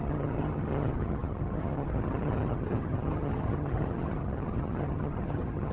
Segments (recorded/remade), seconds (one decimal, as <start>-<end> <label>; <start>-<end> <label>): 0.0-5.7 remade